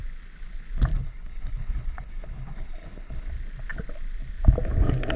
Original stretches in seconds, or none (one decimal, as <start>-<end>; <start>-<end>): 0.0-0.9; 3.3-5.2